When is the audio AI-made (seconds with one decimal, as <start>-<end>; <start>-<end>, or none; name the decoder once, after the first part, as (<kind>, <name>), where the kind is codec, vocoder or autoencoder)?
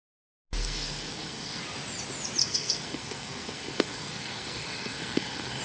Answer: 0.6-1.6 (codec, SNAC); 2.4-5.6